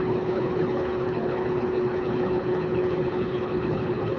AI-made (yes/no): yes